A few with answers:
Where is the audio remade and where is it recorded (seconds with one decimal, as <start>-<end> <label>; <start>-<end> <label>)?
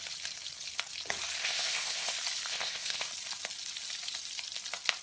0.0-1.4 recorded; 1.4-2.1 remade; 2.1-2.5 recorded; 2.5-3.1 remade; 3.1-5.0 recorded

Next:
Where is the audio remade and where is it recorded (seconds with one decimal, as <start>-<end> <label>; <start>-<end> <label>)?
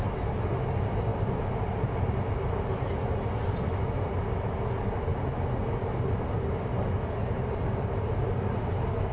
0.0-9.1 recorded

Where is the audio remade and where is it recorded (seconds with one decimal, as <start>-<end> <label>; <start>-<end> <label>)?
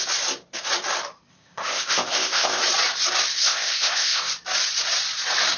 0.0-1.3 recorded; 1.3-2.6 remade; 2.6-3.4 recorded; 3.4-4.3 remade; 4.3-5.6 recorded